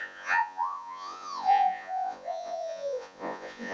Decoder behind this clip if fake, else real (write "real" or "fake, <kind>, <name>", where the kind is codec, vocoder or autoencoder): fake, vocoder, Vocos